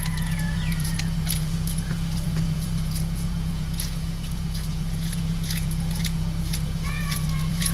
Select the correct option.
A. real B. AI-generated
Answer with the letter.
B